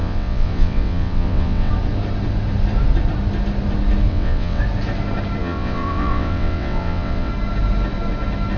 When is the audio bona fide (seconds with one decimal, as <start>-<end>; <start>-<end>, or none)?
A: 1.7-4.1; 4.6-5.4; 7.3-8.6

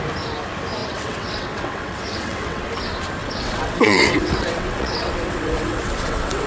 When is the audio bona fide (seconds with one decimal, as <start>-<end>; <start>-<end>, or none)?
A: 0.0-0.8; 2.6-3.2